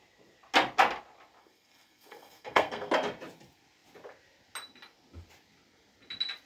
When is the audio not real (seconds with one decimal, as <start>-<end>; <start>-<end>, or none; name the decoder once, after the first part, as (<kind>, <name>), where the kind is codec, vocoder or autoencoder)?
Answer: 1.4-2.9 (codec, SNAC)